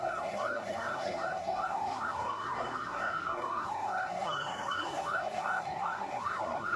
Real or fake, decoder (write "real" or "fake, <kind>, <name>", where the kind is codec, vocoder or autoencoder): fake, codec, SNAC